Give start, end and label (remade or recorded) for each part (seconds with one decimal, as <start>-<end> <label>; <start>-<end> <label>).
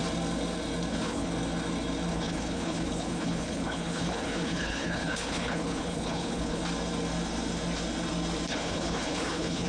0.0-0.9 recorded; 0.9-1.3 remade; 1.3-2.1 recorded; 2.1-6.6 remade; 6.6-8.5 recorded; 8.5-9.7 remade